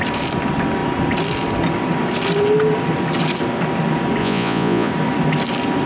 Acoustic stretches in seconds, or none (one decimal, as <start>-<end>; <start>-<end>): 0.0-4.2; 4.9-5.9